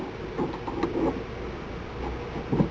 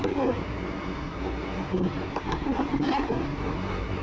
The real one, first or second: first